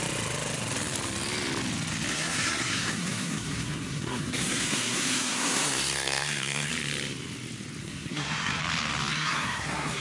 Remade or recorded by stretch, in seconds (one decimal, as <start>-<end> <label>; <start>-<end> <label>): 0.0-2.1 recorded; 2.1-6.7 remade; 6.7-7.8 recorded; 7.8-8.6 remade; 8.6-9.1 recorded; 9.1-10.0 remade